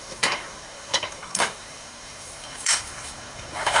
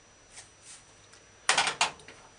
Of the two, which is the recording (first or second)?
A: second